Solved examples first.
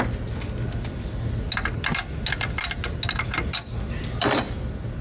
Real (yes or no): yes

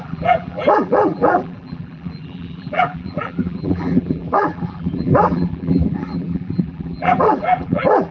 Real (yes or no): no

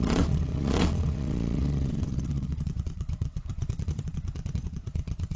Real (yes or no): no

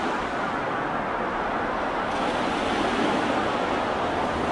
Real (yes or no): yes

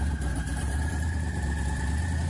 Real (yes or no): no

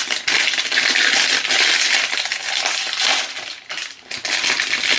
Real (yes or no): yes